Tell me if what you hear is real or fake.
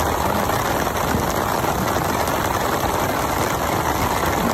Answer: real